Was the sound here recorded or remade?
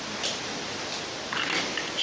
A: recorded